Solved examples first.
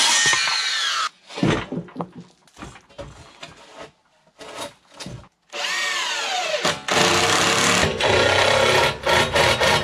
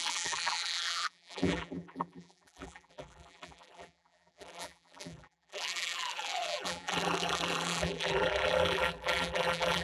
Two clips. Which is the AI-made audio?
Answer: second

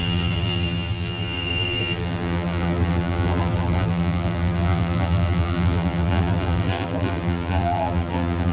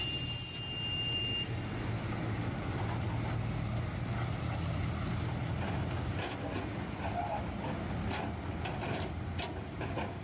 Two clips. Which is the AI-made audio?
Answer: first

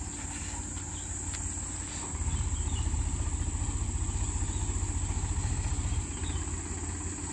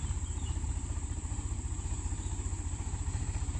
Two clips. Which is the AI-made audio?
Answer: second